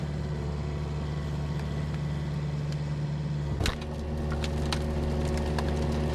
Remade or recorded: recorded